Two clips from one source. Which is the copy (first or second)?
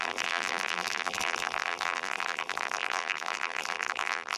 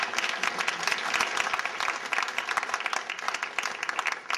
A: first